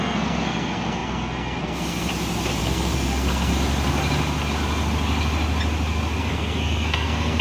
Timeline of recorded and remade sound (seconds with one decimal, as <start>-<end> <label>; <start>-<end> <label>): 0.0-2.1 remade; 2.1-2.6 recorded; 2.6-3.5 remade; 3.5-6.2 recorded; 6.2-7.4 remade

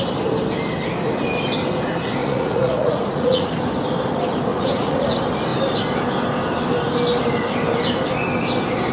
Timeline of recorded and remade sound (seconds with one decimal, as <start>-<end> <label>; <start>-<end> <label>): 0.0-2.2 recorded; 2.2-3.5 remade; 3.5-4.5 recorded; 4.5-5.1 remade; 5.1-8.9 recorded

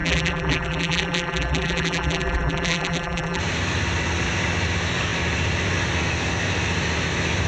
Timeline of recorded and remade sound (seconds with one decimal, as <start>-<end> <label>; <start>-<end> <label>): 0.0-3.4 remade; 3.4-7.5 recorded

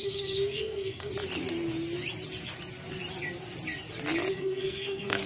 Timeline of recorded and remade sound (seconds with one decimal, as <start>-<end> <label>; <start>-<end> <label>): 0.0-1.1 remade; 1.1-4.3 recorded; 4.3-5.3 remade

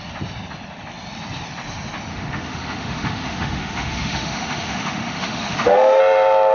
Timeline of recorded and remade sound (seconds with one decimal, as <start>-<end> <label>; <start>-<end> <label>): 0.0-2.1 recorded; 2.1-6.0 remade; 6.0-6.5 recorded

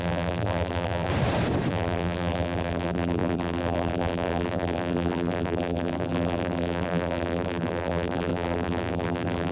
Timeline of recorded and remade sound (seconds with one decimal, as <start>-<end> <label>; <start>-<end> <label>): 0.0-1.1 remade; 1.1-1.7 recorded; 1.7-9.5 remade

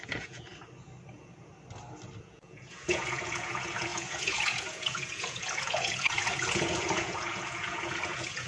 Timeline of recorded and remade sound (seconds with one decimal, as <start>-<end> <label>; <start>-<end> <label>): 0.0-0.5 remade; 0.5-1.1 recorded; 1.1-1.5 remade; 1.5-2.2 recorded; 2.2-8.5 remade